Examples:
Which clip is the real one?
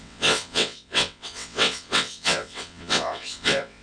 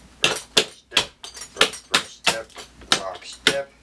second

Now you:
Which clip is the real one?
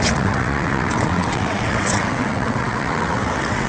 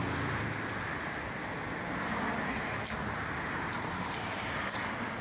second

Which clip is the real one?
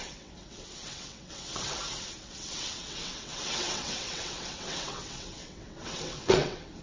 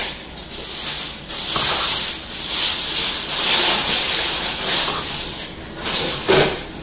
second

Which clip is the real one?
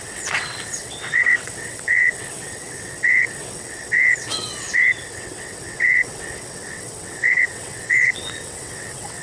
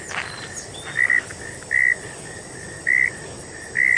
second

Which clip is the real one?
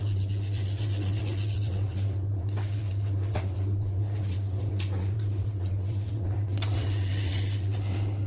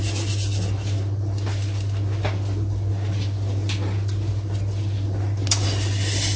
second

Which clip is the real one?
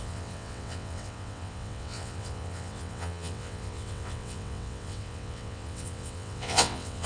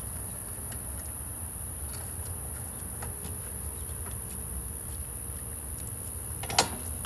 second